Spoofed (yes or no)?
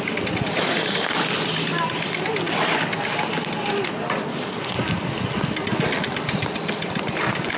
no